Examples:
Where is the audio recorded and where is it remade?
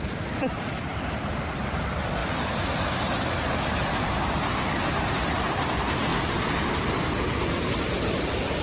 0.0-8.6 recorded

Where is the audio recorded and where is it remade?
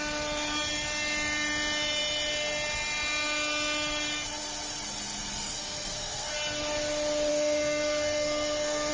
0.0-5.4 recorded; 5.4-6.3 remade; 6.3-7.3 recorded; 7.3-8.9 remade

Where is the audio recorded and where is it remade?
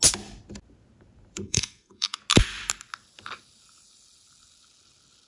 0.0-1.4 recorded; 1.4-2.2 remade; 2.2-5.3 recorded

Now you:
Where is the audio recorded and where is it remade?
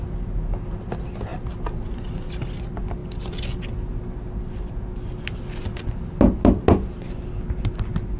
0.0-8.2 recorded